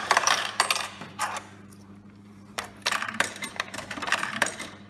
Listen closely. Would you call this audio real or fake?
fake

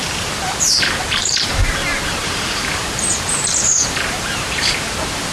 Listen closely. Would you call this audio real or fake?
fake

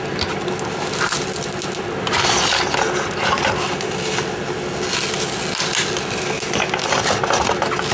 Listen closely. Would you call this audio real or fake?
real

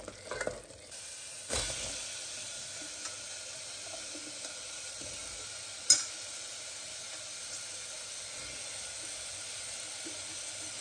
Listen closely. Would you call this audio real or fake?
real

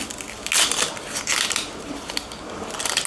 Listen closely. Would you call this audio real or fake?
real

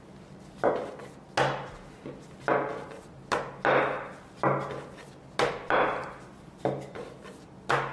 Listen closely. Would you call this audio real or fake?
real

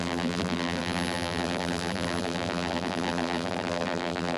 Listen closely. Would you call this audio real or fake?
fake